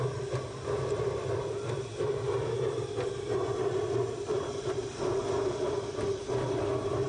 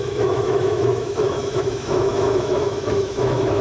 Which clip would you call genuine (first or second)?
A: first